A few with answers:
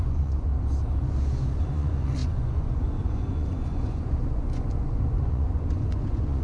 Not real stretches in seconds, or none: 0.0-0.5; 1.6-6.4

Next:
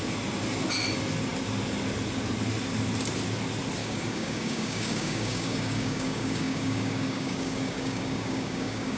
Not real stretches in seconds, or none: 3.8-9.0

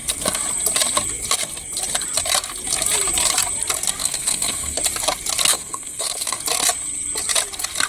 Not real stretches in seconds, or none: 4.0-4.8; 5.5-6.4

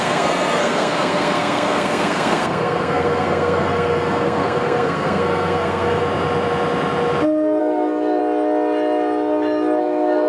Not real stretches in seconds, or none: 0.0-6.0; 7.6-8.2; 9.8-10.3

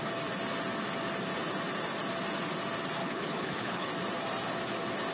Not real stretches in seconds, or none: 3.0-3.9